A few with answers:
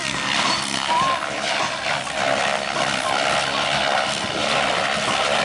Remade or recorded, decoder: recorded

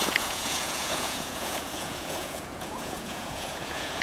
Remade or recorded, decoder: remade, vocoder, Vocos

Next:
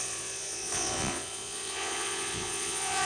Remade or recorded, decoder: remade, vocoder, Vocos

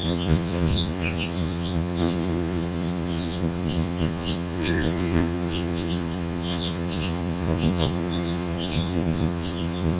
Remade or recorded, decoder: remade, vocoder, Vocos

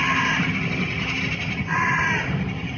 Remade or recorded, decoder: recorded